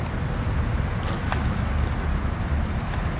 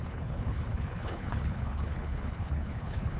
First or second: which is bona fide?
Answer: first